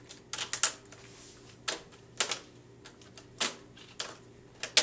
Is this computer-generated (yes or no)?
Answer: no